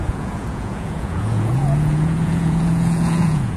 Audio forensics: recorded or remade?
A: remade